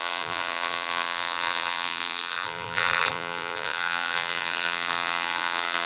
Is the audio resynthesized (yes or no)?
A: yes